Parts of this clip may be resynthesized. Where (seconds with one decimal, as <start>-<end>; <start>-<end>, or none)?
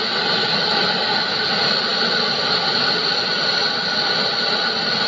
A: none